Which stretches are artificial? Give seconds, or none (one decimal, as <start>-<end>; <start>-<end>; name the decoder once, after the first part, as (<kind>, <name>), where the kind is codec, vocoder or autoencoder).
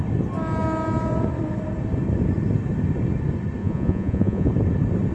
3.6-4.5 (vocoder, Vocos)